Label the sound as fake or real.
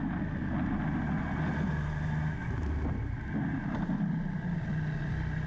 real